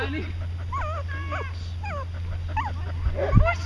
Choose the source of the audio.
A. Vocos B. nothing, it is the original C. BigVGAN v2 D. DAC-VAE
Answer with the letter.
B